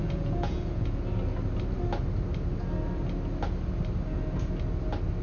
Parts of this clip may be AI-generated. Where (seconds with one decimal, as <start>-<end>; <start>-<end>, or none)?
0.0-1.0